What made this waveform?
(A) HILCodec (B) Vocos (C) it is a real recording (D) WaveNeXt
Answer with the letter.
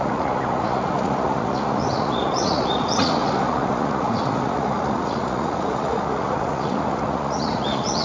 B